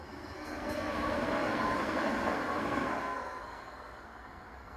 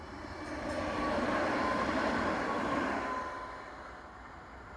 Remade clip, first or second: first